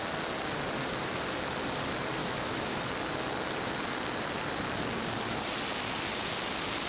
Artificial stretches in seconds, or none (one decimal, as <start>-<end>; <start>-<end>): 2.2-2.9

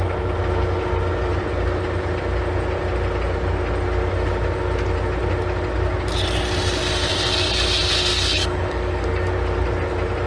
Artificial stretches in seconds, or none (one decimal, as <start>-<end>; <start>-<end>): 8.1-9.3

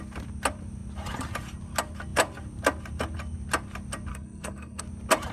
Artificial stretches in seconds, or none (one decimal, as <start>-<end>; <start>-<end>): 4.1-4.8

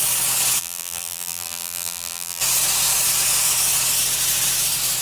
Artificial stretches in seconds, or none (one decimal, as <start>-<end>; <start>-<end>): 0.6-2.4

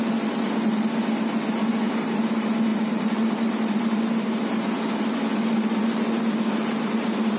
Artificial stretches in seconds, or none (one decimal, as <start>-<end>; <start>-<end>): 2.7-3.8

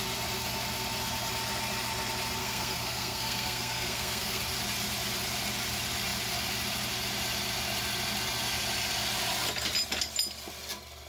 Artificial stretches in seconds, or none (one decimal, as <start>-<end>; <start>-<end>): 2.4-4.4